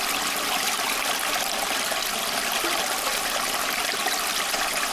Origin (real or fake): real